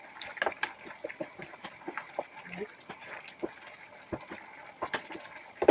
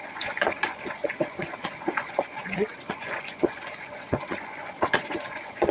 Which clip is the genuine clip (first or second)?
first